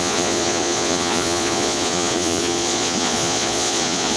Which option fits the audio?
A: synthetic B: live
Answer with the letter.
A